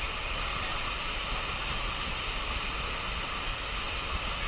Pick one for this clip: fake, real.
real